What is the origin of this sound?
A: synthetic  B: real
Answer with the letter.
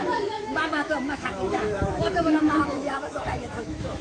A